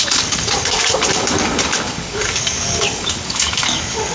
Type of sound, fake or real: fake